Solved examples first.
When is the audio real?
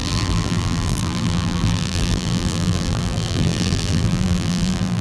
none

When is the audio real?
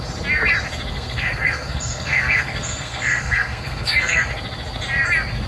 0.0-0.9; 4.2-5.5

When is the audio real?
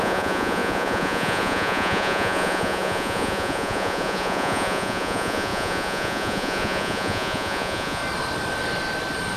8.0-9.4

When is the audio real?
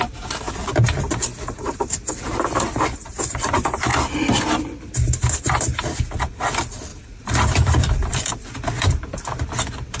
1.3-2.1; 3.9-5.4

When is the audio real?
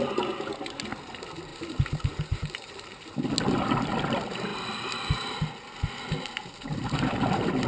0.0-1.5; 3.2-7.7